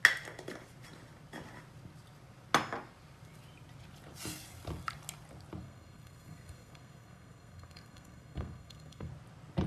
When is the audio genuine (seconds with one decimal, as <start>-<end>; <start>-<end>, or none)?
0.0-5.6; 9.1-9.7